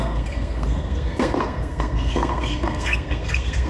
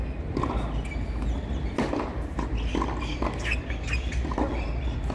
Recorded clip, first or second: second